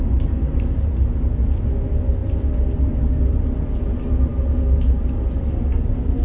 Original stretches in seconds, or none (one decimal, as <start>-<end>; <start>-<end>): 0.0-6.2